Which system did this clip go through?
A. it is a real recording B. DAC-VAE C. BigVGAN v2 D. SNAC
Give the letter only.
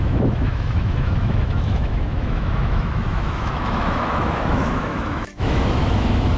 B